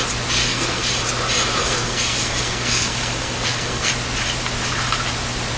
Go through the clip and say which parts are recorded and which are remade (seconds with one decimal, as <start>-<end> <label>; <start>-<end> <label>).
0.0-0.4 recorded; 0.4-0.9 remade; 0.9-1.6 recorded; 1.6-3.9 remade; 3.9-5.6 recorded